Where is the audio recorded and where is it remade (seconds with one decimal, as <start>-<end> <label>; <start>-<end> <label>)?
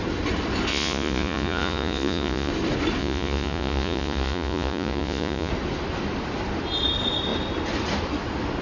0.0-0.7 recorded; 0.7-2.5 remade; 2.5-3.0 recorded; 3.0-5.5 remade; 5.5-8.6 recorded